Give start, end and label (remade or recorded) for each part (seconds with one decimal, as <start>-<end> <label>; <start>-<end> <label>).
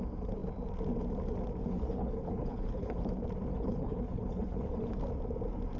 0.0-1.6 recorded; 1.6-3.0 remade; 3.0-3.5 recorded; 3.5-5.0 remade; 5.0-5.8 recorded